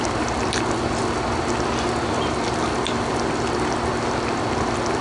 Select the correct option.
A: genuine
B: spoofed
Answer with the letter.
A